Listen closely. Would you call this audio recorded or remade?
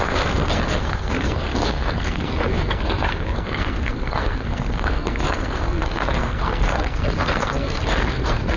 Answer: remade